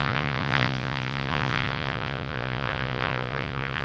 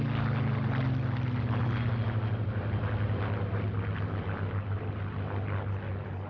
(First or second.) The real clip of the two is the second